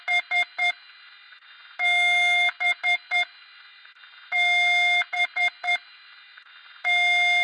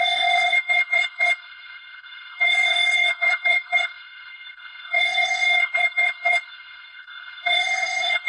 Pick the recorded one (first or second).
first